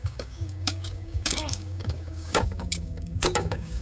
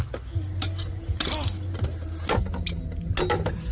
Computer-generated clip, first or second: first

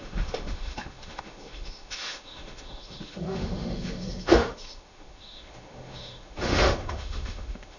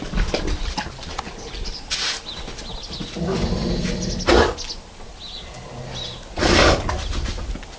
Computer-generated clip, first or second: first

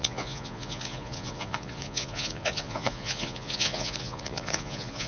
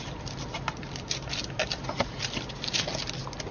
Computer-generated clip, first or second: first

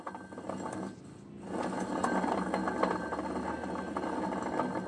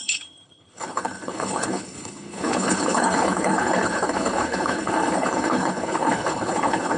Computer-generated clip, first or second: second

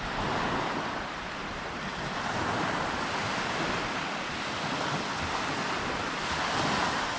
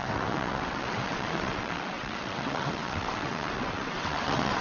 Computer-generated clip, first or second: second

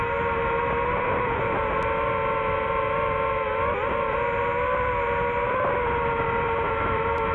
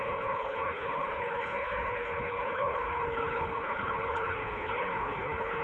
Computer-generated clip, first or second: second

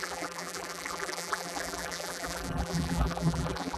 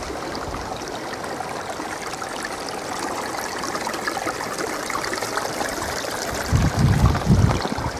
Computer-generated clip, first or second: first